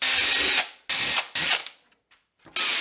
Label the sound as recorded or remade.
recorded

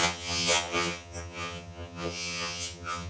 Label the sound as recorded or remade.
remade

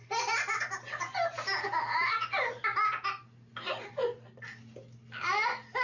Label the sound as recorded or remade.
recorded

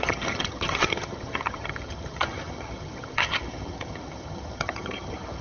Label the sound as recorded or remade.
remade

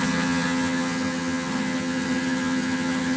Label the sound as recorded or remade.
remade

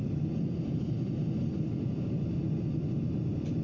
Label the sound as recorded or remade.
recorded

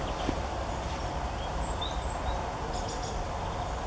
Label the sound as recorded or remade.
recorded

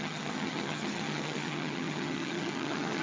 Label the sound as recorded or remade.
remade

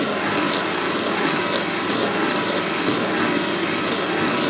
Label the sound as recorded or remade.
recorded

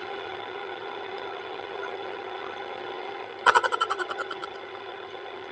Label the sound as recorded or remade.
remade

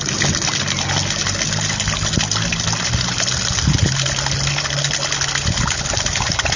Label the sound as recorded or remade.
recorded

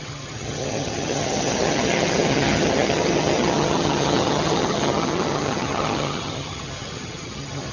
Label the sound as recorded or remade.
remade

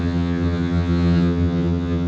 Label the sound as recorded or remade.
remade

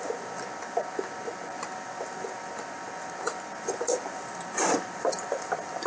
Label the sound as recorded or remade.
recorded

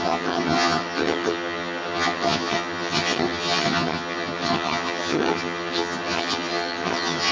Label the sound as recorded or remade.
remade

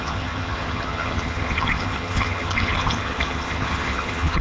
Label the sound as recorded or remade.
remade